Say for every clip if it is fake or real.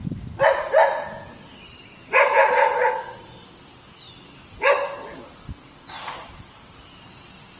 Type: real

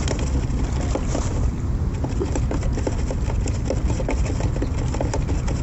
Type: real